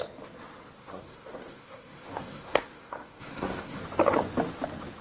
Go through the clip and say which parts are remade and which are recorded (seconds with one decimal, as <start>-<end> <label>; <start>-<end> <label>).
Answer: 0.0-0.8 recorded; 0.8-3.8 remade; 3.8-5.0 recorded